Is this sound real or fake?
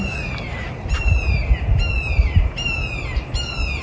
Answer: real